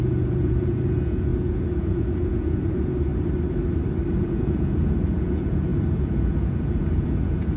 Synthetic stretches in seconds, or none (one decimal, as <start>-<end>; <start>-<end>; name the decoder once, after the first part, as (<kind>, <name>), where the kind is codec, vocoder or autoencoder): 0.0-3.1 (vocoder, Vocos); 4.1-7.6